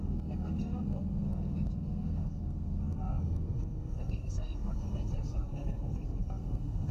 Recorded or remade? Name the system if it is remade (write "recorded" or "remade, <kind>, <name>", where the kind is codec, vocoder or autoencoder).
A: remade, codec, SNAC